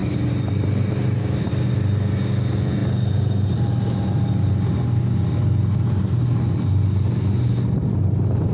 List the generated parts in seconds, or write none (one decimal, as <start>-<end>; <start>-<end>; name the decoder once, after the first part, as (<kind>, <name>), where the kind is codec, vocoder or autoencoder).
0.0-1.5 (vocoder, BigVGAN v2)